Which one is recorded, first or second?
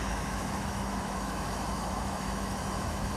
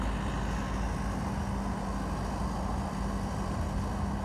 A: second